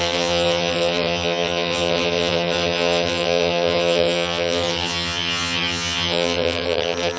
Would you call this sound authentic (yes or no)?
no